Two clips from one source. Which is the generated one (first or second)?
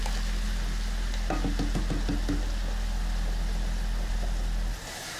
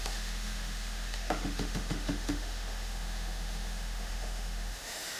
second